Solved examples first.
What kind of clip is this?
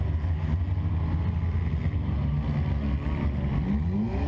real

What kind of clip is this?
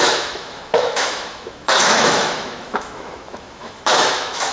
fake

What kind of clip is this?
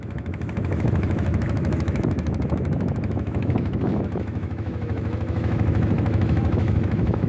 fake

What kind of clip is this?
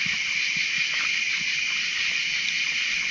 real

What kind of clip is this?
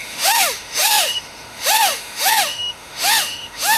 fake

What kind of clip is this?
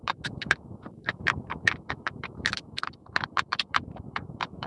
fake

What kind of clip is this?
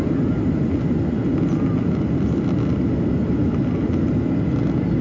real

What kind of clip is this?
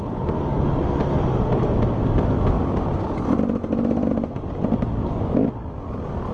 real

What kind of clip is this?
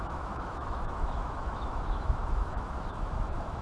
fake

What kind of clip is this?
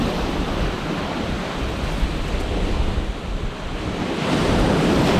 real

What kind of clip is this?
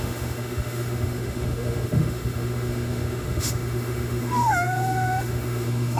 fake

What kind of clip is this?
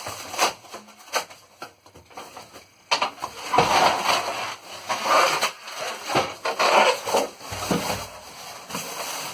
real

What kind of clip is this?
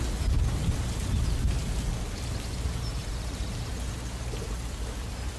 real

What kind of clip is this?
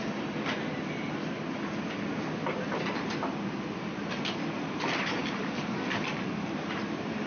real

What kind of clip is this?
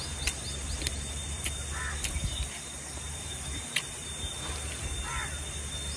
real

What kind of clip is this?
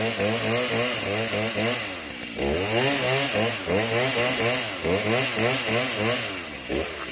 real